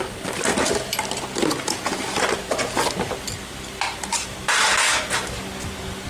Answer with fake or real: real